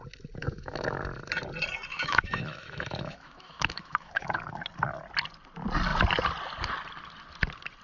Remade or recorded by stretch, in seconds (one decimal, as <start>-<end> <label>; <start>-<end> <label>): 0.0-0.4 recorded; 0.4-1.0 remade; 1.0-1.9 recorded; 1.9-4.4 remade; 4.4-7.8 recorded